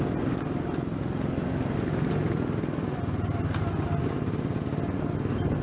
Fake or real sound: real